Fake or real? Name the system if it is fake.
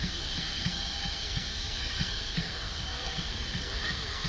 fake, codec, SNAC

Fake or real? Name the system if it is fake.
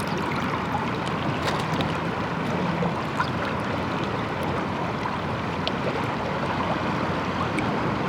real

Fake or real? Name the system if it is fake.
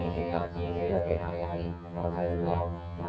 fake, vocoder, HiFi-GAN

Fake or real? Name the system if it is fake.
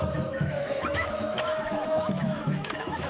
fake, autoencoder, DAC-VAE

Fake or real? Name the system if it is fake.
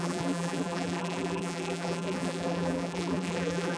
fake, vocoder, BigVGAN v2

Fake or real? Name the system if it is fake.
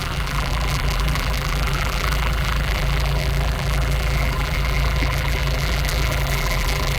fake, vocoder, BigVGAN v2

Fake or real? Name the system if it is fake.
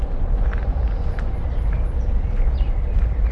fake, vocoder, BigVGAN v2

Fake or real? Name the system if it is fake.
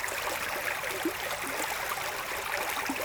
real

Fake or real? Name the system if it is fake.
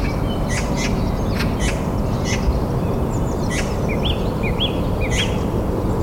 real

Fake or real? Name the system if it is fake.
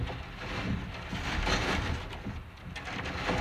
real